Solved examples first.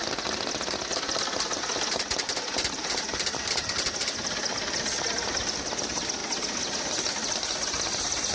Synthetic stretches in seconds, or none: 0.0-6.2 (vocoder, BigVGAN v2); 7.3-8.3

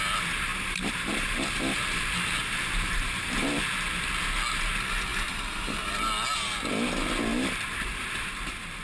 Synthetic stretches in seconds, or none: 0.5-3.6 (vocoder, BigVGAN v2); 5.1-5.9; 7.3-8.8

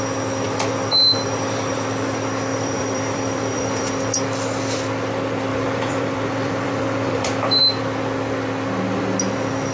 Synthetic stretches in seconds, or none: 2.5-3.9 (vocoder, BigVGAN v2); 5.5-7.6

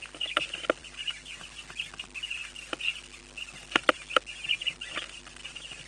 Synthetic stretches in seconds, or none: 0.8-1.4 (vocoder, BigVGAN v2); 4.6-5.9

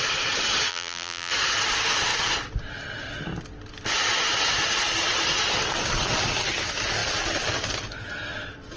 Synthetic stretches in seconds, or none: 0.7-1.3 (vocoder, BigVGAN v2)

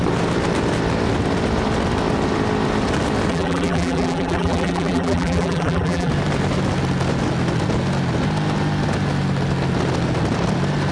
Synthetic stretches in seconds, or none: 3.3-6.1 (vocoder, BigVGAN v2)

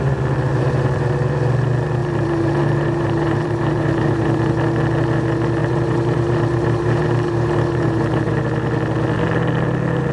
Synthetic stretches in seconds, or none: 0.5-1.0 (vocoder, BigVGAN v2); 2.0-4.5; 5.6-8.3